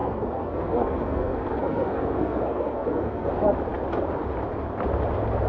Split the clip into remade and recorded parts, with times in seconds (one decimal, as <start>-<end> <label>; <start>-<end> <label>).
0.0-3.3 remade; 3.3-5.5 recorded